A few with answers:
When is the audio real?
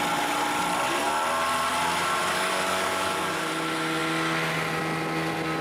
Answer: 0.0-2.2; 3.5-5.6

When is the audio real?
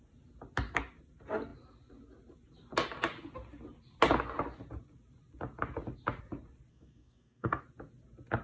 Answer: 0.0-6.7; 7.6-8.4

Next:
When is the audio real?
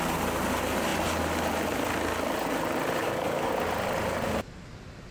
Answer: 0.0-3.0; 3.5-5.1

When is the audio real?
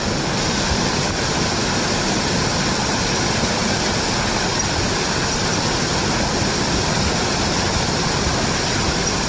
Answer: 0.0-9.3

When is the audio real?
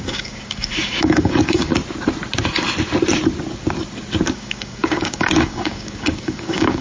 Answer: 1.7-4.3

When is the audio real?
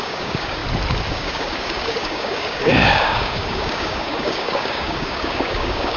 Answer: 0.6-1.1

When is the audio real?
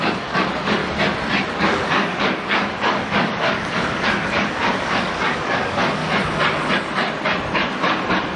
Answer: 0.8-1.5; 6.0-8.4